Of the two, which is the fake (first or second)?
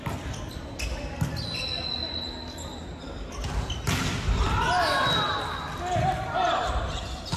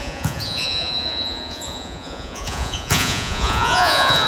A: second